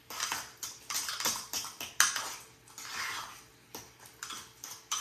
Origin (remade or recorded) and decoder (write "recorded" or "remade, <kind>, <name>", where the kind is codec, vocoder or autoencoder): recorded